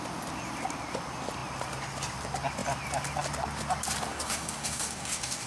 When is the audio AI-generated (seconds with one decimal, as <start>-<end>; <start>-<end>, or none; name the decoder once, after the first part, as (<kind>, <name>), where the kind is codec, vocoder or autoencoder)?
4.1-5.5 (codec, DAC)